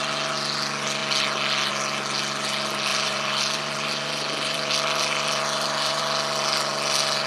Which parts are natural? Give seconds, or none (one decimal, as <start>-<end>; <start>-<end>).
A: 0.0-2.9; 6.0-7.3